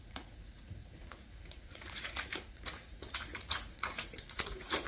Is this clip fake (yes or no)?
yes